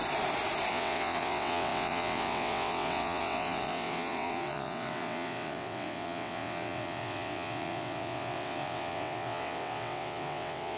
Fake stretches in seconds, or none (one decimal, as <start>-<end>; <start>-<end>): 0.7-10.8